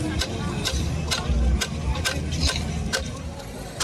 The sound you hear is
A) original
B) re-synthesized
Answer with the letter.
A